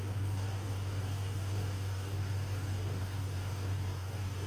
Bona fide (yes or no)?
no